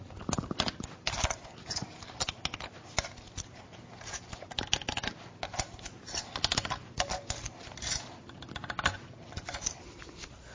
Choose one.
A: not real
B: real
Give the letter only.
B